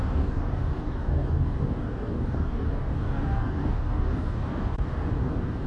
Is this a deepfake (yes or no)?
yes